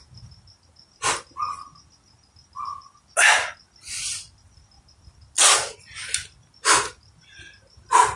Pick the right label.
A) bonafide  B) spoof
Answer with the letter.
A